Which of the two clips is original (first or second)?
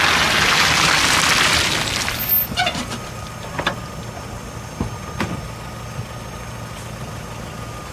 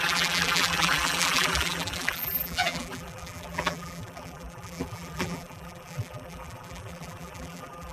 first